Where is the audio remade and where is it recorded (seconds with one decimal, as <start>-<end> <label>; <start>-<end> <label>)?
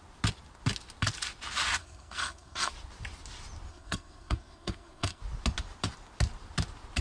0.0-1.8 recorded; 1.8-2.7 remade; 2.7-3.7 recorded; 3.7-5.2 remade; 5.2-7.0 recorded